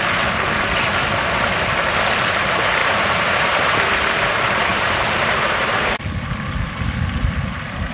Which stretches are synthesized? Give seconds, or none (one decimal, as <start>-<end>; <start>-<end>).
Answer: 2.8-4.3; 4.7-6.0